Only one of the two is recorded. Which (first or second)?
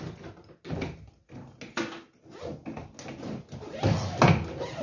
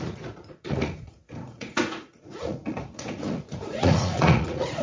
first